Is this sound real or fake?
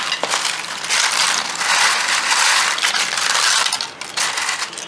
real